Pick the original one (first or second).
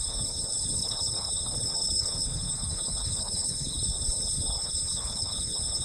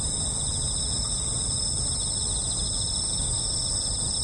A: second